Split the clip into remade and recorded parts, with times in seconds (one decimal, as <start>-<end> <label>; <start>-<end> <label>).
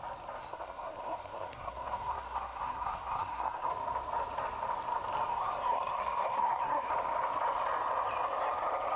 0.0-0.4 recorded; 0.4-3.7 remade; 3.7-5.3 recorded; 5.3-6.9 remade; 6.9-9.0 recorded